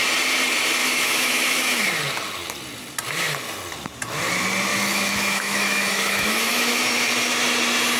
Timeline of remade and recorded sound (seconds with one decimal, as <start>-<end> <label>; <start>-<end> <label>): 0.0-0.8 recorded; 0.8-1.8 remade; 1.8-4.7 recorded; 4.7-6.8 remade; 6.8-8.0 recorded